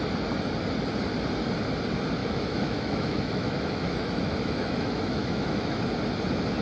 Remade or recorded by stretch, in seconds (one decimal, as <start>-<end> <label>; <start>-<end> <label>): 0.0-2.2 recorded; 2.2-5.8 remade; 5.8-6.6 recorded